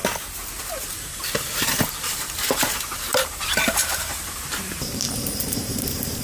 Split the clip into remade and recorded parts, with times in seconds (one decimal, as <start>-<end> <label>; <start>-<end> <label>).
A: 0.0-0.6 recorded; 0.6-6.2 remade